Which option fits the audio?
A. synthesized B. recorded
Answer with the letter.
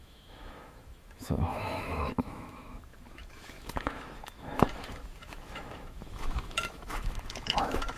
A